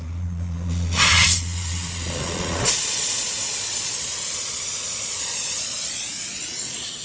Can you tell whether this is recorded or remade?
remade